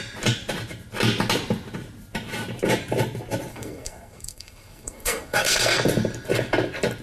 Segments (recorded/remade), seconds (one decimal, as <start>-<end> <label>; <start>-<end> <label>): 0.0-3.5 recorded; 3.5-5.8 remade; 5.8-7.0 recorded